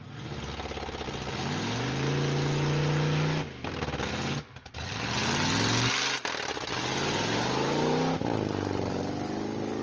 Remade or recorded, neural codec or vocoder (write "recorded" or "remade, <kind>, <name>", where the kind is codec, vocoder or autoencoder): recorded